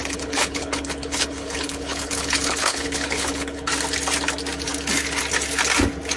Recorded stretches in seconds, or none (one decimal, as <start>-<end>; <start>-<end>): 3.7-6.2